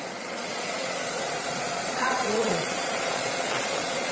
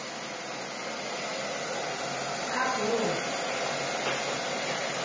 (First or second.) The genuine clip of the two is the second